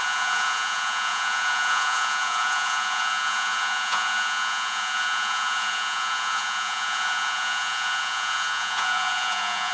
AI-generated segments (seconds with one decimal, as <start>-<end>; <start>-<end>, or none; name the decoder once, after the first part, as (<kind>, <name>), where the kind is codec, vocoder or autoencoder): 0.0-9.7 (vocoder, Vocos)